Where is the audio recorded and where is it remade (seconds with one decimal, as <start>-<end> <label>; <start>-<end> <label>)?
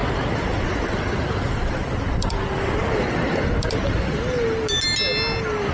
0.0-0.6 recorded; 0.6-2.8 remade; 2.8-5.7 recorded